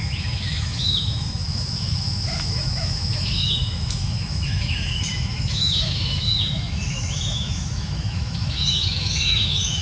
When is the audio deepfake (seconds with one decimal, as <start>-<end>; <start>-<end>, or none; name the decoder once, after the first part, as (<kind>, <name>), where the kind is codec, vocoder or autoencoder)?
0.0-9.8 (autoencoder, DAC-VAE)